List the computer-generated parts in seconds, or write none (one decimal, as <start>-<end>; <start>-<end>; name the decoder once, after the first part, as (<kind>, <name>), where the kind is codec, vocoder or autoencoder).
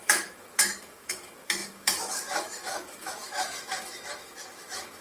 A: 0.0-5.0 (autoencoder, DAC-VAE)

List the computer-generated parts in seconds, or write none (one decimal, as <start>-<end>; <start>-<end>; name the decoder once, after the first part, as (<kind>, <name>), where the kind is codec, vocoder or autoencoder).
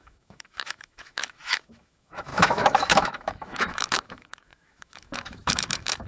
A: 0.0-6.1 (autoencoder, DAC-VAE)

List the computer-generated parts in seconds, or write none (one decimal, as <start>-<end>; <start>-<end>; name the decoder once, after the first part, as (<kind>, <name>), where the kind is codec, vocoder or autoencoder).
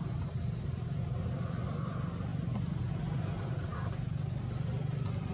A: none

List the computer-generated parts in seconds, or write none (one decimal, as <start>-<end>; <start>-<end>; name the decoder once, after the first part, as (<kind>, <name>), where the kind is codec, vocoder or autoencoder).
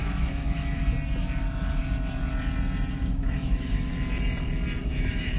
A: 0.0-0.8 (autoencoder, DAC-VAE); 1.4-1.8; 2.9-3.9; 4.8-5.4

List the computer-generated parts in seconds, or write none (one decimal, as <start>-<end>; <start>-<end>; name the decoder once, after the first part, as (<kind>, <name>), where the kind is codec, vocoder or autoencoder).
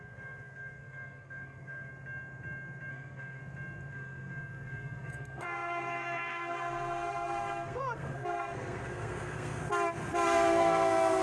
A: 0.0-1.9 (codec, SNAC); 2.9-3.4; 3.9-9.6; 10.1-11.2